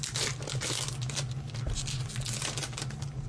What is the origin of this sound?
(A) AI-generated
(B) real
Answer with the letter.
B